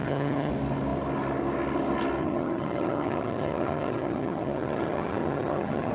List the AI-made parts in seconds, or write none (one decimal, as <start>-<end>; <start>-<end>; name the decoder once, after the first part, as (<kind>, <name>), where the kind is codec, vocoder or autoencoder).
0.0-0.5 (vocoder, HiFi-GAN); 2.2-5.9